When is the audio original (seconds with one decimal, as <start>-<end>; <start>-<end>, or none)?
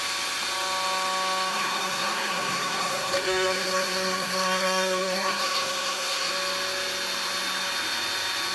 0.0-1.5; 6.3-8.5